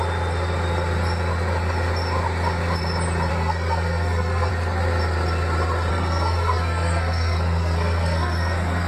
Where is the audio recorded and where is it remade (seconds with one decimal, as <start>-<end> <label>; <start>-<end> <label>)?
0.0-3.3 recorded; 3.3-4.5 remade; 4.5-5.9 recorded; 5.9-8.9 remade